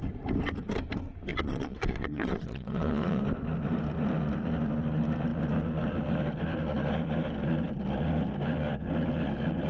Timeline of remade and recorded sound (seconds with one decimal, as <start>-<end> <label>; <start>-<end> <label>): 0.0-1.3 recorded; 1.3-3.2 remade; 3.2-9.7 recorded